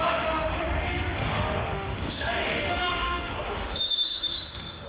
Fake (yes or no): yes